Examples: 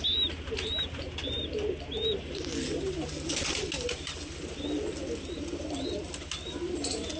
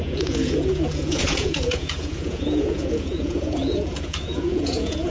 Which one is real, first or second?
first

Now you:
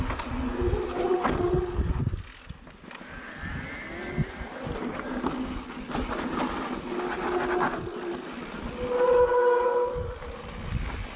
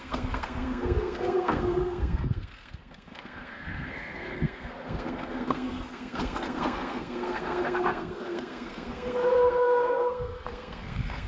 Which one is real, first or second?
first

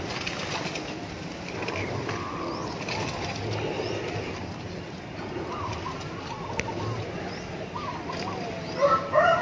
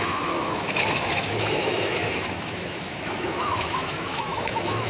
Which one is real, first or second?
first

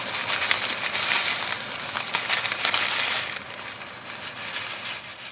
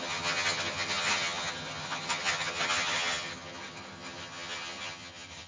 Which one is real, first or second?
first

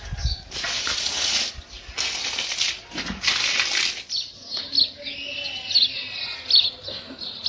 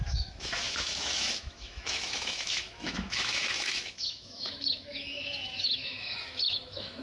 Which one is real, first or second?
first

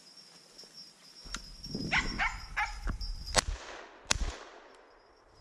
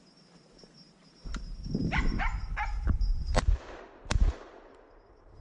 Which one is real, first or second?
first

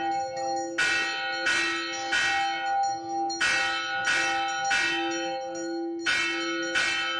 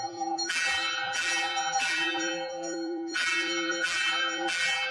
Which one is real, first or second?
first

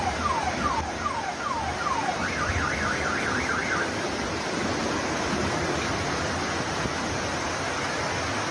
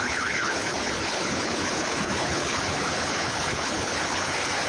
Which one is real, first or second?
first